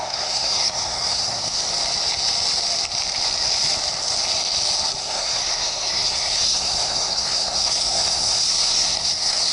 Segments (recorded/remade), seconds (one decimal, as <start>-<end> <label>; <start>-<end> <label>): 0.0-1.6 remade; 1.6-5.0 recorded; 5.0-9.5 remade